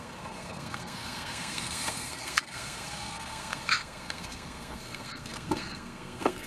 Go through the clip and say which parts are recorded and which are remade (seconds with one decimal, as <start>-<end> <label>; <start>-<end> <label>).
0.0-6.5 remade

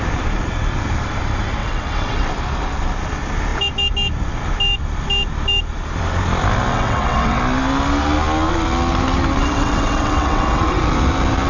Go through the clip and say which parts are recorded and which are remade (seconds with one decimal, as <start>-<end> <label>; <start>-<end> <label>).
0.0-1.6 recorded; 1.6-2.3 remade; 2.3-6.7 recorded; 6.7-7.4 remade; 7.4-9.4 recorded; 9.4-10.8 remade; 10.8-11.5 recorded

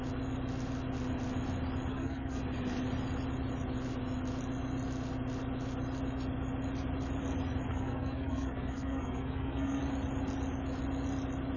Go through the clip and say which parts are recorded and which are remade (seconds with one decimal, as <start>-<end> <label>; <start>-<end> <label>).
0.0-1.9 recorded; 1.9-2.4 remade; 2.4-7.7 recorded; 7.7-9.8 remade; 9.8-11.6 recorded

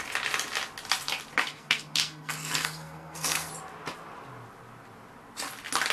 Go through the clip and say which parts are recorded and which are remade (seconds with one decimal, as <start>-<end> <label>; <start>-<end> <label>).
0.0-1.4 recorded; 1.4-3.5 remade; 3.5-5.9 recorded

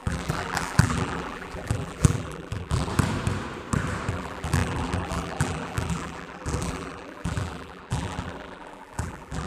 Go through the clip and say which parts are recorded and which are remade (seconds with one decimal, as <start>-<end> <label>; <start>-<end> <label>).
0.0-2.9 remade; 2.9-4.1 recorded; 4.1-9.5 remade

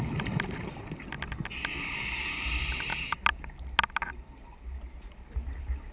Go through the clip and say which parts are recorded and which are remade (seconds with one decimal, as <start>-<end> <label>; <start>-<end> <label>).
0.0-5.9 recorded